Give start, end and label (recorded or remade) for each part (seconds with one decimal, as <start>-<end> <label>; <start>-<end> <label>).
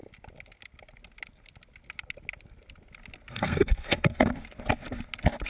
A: 0.0-3.3 recorded; 3.3-4.3 remade; 4.3-5.5 recorded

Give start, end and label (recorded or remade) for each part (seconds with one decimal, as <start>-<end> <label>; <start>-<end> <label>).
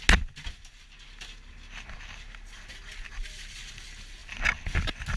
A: 0.0-5.2 recorded